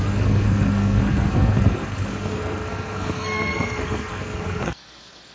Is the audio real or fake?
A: fake